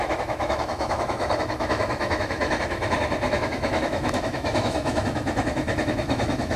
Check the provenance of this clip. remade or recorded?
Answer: remade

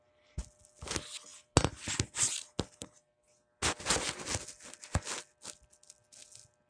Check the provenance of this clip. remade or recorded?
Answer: recorded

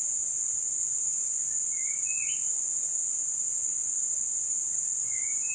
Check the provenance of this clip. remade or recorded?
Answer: recorded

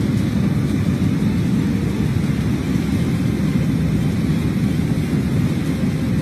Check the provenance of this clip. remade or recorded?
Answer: recorded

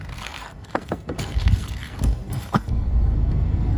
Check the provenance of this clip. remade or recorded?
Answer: remade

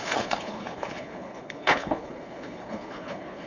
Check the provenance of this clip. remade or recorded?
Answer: remade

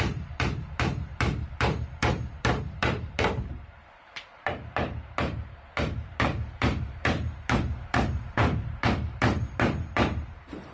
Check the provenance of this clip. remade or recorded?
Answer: remade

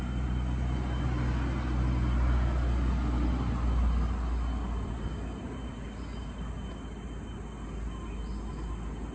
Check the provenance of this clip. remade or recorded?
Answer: recorded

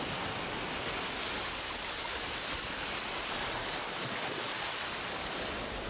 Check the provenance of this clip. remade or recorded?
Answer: recorded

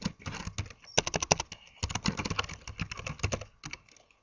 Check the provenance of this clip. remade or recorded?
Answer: recorded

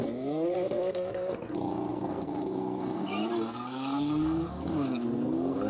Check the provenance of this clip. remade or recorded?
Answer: remade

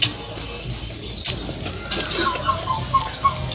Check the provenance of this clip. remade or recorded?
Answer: recorded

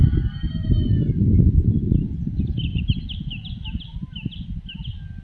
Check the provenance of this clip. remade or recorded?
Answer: recorded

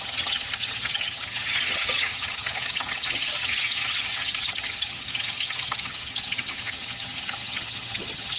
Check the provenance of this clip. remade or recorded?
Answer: remade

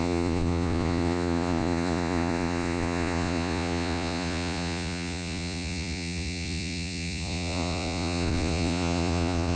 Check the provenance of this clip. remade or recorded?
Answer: remade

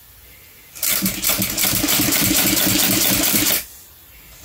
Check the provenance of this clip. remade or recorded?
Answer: remade